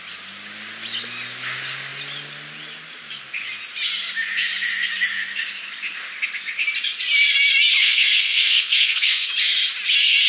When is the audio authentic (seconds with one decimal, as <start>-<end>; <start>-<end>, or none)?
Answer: 0.0-7.8; 9.3-10.3